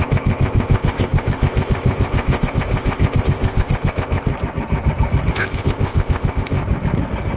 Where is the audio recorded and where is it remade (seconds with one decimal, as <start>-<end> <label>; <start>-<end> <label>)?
0.0-4.3 remade; 4.3-5.3 recorded; 5.3-6.6 remade; 6.6-7.4 recorded